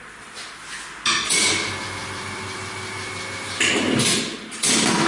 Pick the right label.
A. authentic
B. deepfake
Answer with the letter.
A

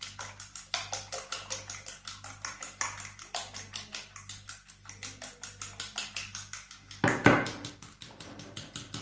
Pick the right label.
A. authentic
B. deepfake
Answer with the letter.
A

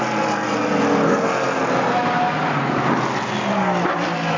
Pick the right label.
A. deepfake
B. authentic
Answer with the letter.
B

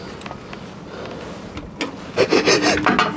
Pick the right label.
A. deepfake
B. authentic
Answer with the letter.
B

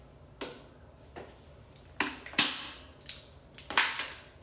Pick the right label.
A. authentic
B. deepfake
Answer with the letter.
A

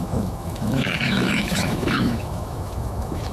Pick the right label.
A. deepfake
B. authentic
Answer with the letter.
A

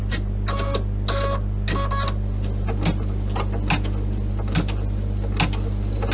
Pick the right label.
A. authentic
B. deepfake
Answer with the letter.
A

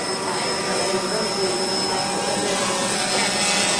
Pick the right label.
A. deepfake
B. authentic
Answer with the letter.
B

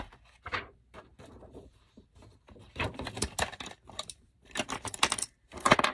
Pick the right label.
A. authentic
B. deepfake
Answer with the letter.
B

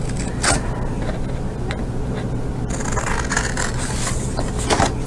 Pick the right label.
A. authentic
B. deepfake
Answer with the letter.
A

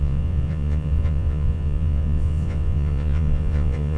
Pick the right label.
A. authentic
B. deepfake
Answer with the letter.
B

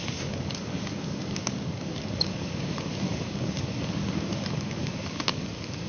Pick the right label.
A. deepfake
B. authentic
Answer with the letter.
A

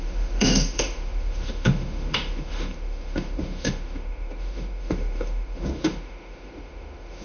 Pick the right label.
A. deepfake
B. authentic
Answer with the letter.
A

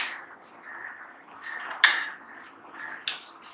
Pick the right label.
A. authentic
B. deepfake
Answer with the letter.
A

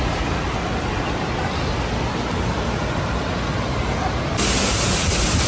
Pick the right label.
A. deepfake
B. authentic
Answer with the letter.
B